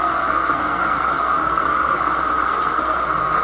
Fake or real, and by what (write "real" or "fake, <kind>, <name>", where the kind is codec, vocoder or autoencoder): fake, codec, SNAC